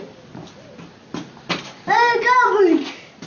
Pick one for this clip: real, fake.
real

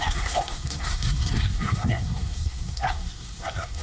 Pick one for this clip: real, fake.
fake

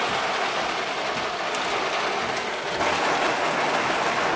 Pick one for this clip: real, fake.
real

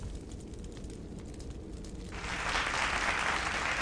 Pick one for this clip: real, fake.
real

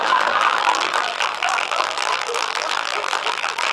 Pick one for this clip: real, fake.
fake